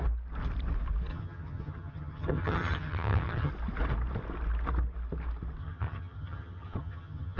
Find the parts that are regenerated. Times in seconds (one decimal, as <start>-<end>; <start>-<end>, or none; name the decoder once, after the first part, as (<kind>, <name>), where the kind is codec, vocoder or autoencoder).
1.1-3.5 (vocoder, HiFi-GAN); 5.6-7.4